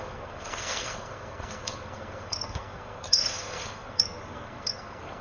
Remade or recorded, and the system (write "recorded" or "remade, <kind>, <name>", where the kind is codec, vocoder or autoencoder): remade, codec, SNAC